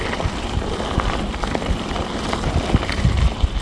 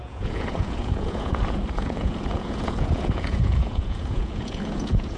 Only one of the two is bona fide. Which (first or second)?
first